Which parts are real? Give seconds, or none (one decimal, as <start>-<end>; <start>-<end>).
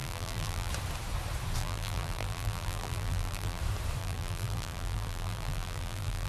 0.7-1.6; 3.6-4.0